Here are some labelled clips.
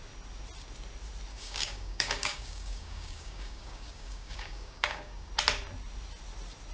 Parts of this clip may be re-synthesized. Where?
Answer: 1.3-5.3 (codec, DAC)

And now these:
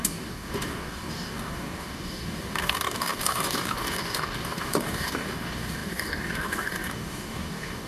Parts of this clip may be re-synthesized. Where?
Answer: 0.0-7.9 (codec, DAC)

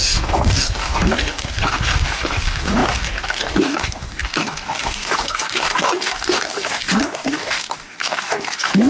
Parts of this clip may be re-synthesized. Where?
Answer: 0.0-8.9 (codec, DAC)

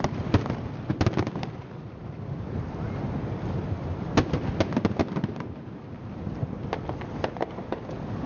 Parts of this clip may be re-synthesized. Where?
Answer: none

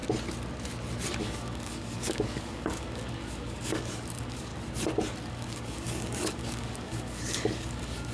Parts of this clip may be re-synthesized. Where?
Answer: 1.2-4.5 (codec, DAC); 5.3-8.1

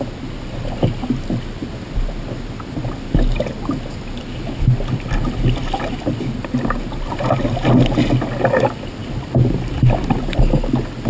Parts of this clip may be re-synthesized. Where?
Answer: none